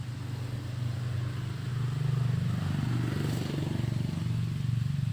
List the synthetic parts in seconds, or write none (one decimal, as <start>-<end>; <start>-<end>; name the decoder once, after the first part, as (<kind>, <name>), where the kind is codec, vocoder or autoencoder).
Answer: none

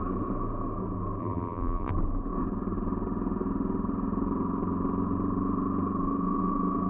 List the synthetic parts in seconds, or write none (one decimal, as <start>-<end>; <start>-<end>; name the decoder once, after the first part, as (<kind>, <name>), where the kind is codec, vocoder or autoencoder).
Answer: 1.2-1.9 (vocoder, BigVGAN v2)

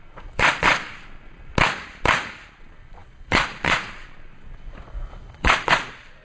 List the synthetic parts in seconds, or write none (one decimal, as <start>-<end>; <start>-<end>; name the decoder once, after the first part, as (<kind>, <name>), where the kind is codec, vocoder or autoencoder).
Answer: 0.0-1.5 (vocoder, Vocos); 2.6-6.2

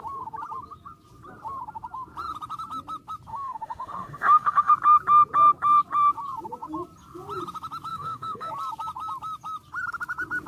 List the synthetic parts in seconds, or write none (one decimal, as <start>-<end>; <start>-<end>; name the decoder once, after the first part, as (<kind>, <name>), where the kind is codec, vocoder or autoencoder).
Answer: 3.3-4.7 (autoencoder, DAC-VAE); 7.9-8.5

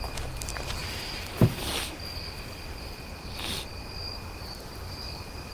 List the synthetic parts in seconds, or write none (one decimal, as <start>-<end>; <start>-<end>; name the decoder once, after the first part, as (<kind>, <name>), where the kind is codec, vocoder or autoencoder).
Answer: 0.8-1.6 (autoencoder, DAC-VAE)

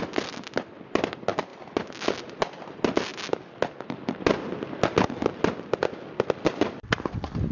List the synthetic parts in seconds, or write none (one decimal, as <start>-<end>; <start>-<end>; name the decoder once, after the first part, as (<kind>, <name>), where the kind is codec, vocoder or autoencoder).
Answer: none